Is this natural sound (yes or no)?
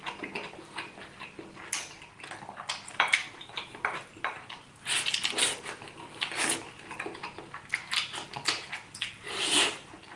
yes